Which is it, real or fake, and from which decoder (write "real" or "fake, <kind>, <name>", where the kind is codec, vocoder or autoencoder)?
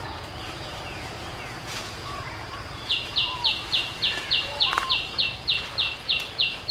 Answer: fake, vocoder, Vocos